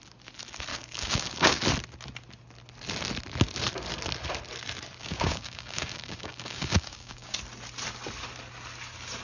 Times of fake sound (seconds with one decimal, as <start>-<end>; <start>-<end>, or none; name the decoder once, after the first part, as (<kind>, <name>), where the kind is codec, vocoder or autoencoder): 0.7-1.6 (codec, DAC); 5.0-7.4